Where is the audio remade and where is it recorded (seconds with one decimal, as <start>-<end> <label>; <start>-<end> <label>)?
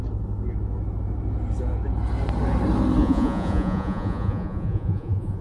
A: 0.0-3.0 recorded; 3.0-5.4 remade